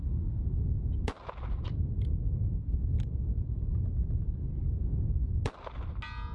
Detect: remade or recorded recorded